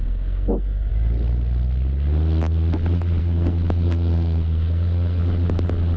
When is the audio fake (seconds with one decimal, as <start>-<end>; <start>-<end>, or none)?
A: 0.0-0.9; 3.2-5.2